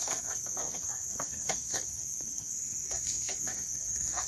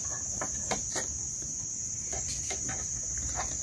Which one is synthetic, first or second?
first